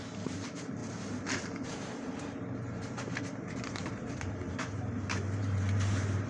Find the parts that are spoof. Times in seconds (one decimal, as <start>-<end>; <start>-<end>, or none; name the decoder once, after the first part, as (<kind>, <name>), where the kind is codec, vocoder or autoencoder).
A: 0.0-6.3 (vocoder, BigVGAN v2)